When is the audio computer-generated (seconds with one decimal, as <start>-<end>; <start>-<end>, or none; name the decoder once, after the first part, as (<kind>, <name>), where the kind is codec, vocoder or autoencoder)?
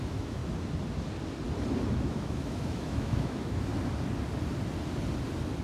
0.0-0.4 (autoencoder, DAC-VAE); 1.9-3.7